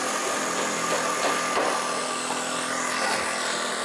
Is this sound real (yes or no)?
yes